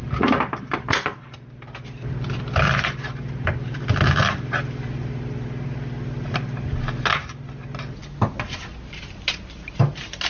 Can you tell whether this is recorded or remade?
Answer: recorded